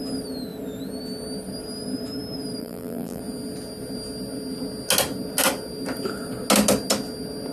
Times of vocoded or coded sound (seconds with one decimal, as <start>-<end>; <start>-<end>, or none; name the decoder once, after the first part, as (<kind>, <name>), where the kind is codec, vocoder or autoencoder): 2.6-3.2 (vocoder, BigVGAN v2)